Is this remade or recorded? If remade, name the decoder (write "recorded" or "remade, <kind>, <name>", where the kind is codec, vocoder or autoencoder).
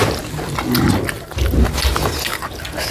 recorded